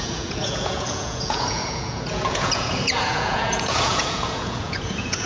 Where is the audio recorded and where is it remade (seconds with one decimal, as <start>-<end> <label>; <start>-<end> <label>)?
0.0-5.3 remade